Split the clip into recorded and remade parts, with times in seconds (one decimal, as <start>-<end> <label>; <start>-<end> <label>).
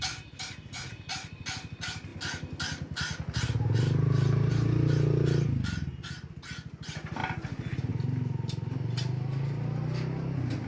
0.0-10.7 recorded